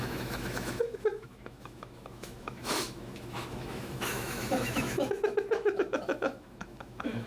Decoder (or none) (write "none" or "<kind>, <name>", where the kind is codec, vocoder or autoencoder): autoencoder, DAC-VAE